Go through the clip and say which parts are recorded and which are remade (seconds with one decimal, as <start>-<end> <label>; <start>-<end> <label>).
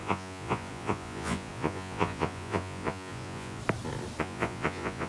0.0-3.6 remade; 3.6-4.2 recorded; 4.2-5.1 remade